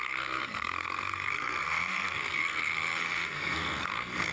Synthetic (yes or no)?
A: yes